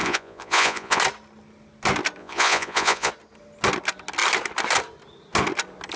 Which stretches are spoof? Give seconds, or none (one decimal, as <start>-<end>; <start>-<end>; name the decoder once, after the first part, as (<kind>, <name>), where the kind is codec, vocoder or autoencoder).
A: 0.0-1.0 (vocoder, Vocos); 2.2-3.1